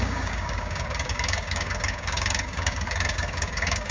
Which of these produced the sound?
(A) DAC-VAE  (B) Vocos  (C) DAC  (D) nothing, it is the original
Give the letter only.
C